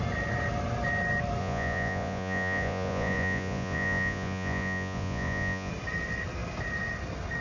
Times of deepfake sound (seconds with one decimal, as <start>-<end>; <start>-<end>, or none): 1.4-5.7